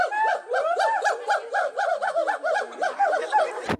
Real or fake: fake